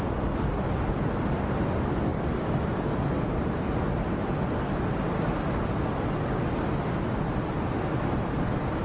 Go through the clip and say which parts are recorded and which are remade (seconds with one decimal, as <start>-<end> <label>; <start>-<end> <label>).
0.0-8.8 recorded